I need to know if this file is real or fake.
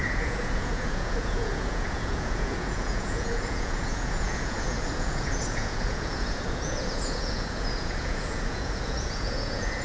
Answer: fake